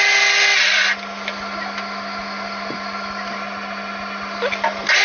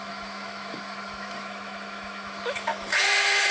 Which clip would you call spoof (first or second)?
second